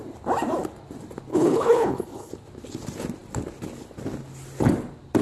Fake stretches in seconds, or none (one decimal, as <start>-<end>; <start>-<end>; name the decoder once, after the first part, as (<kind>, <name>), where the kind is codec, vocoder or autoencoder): 1.3-2.3 (codec, HILCodec)